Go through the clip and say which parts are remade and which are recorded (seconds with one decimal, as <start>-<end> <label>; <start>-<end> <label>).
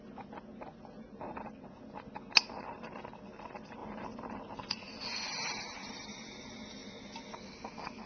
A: 0.0-8.1 recorded